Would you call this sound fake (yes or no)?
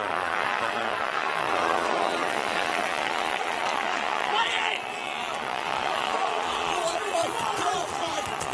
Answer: yes